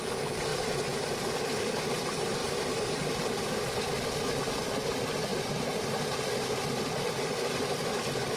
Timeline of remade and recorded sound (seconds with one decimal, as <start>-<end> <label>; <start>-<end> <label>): 0.0-5.3 recorded; 5.3-6.2 remade; 6.2-8.4 recorded